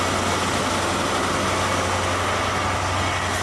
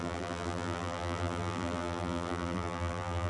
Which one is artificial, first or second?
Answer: second